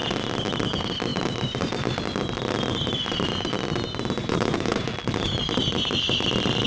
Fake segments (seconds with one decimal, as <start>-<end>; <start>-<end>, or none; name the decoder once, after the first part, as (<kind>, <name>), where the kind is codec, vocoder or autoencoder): 4.2-4.9 (vocoder, Vocos)